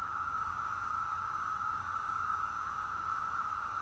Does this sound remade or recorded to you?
remade